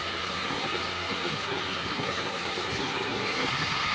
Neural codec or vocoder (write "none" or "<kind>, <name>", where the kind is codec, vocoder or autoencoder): codec, SNAC